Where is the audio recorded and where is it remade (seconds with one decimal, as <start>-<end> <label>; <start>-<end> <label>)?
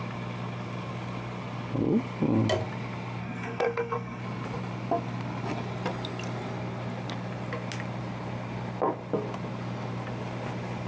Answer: 0.0-3.2 recorded; 3.2-4.2 remade; 4.2-10.9 recorded